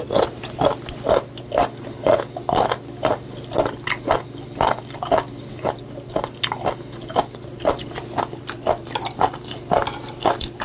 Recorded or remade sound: recorded